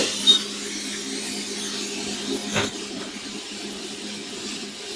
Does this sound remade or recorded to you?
recorded